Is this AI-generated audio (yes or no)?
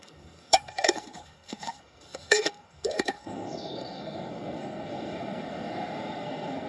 yes